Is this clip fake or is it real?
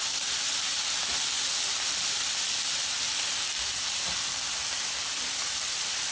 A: real